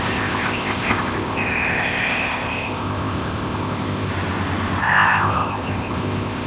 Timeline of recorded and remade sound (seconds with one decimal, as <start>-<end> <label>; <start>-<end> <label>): 0.0-4.1 remade; 4.1-4.8 recorded; 4.8-6.5 remade